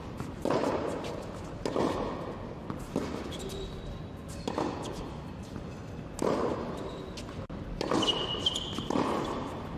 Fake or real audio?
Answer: real